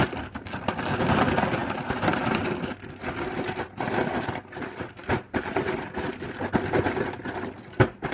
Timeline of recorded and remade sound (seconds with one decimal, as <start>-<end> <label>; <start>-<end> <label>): 0.0-8.1 recorded